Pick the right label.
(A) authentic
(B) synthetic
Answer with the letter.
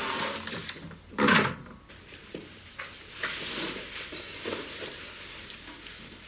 A